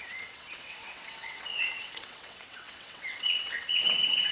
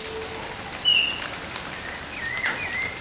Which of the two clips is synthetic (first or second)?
first